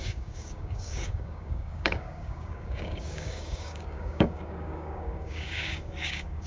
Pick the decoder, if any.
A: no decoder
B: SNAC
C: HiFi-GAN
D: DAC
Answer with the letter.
D